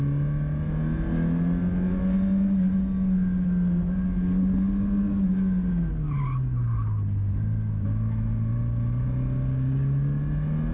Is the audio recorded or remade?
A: recorded